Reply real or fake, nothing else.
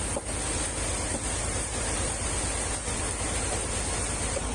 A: real